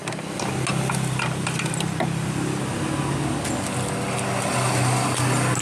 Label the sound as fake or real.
real